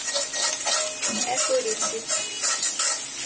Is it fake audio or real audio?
real